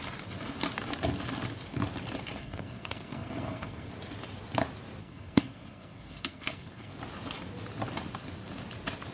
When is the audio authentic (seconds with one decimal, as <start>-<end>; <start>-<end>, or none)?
0.0-2.4; 3.9-5.0; 6.9-9.1